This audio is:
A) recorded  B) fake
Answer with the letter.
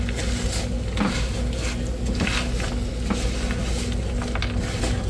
A